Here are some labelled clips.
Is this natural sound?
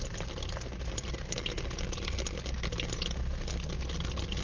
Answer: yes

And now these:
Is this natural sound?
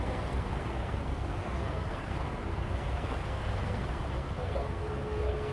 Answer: no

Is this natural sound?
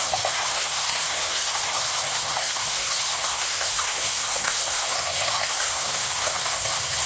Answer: no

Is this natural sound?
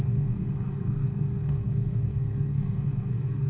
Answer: no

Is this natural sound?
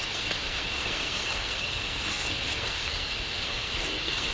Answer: no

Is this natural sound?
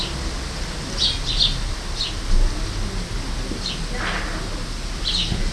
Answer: yes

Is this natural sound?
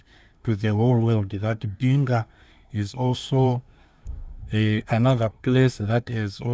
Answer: no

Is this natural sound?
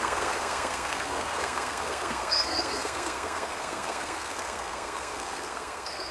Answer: no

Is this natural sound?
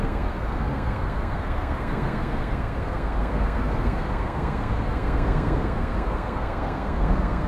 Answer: no